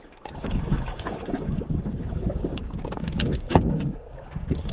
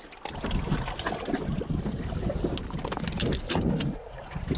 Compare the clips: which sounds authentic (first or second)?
second